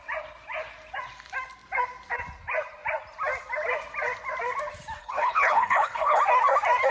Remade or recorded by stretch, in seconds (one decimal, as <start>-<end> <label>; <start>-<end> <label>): 0.0-5.0 recorded; 5.0-6.2 remade; 6.2-6.9 recorded